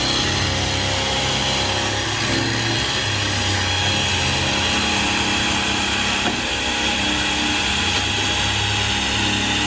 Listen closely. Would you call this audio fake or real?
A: real